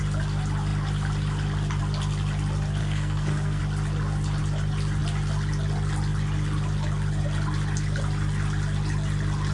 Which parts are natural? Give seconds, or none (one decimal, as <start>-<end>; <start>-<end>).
0.0-2.8; 3.6-9.5